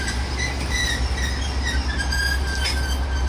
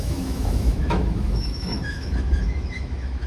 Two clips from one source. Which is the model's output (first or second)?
second